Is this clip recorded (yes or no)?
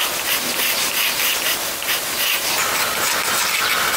yes